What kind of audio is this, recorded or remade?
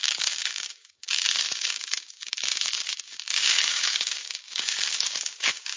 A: remade